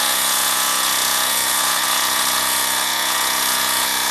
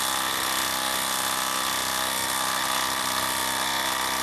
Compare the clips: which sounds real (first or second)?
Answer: second